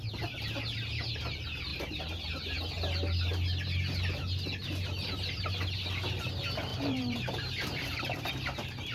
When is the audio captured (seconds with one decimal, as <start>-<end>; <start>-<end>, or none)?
0.0-1.7; 2.2-6.7; 8.3-8.9